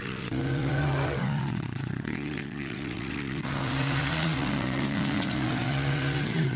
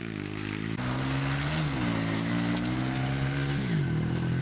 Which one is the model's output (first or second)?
first